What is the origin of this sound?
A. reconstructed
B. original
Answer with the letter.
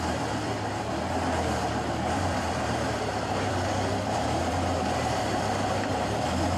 A